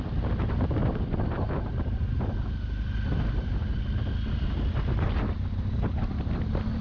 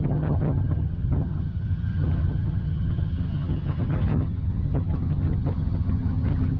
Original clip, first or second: first